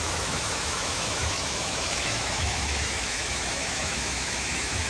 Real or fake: fake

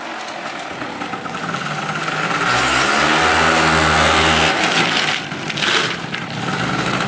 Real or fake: real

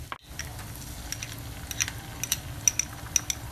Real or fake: real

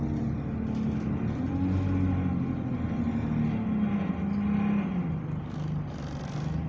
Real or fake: real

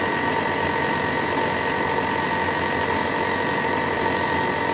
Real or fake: real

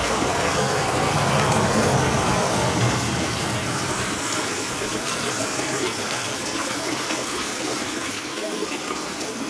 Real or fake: fake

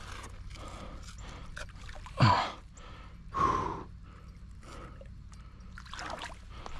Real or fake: real